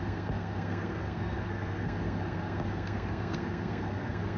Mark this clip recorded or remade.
remade